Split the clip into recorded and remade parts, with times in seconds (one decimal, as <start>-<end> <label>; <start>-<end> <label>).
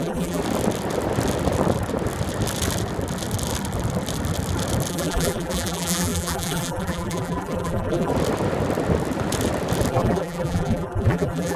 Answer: 0.0-0.4 remade; 0.4-4.9 recorded; 4.9-8.1 remade; 8.1-9.9 recorded; 9.9-11.6 remade